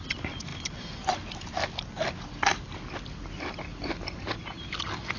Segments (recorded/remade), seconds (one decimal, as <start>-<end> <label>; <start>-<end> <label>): 0.0-5.2 recorded